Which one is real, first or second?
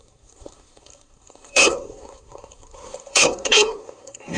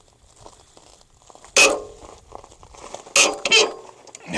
second